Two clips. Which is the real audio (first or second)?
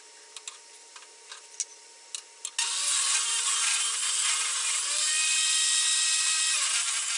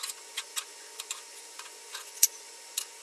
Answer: first